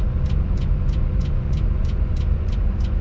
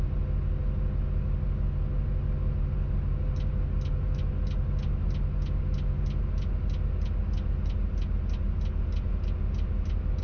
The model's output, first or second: first